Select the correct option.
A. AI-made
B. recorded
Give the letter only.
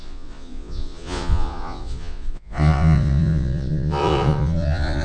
A